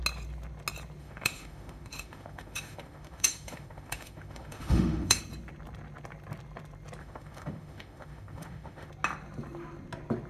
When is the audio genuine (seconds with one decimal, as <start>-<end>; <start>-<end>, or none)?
0.0-1.0; 5.2-7.0; 8.9-10.3